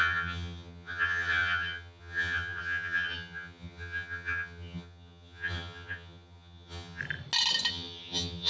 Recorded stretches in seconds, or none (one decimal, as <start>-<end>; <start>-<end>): 7.0-7.7